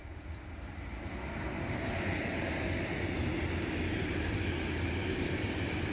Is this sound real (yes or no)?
yes